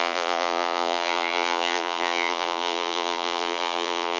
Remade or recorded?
remade